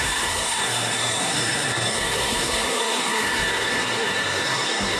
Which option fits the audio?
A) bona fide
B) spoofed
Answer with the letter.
B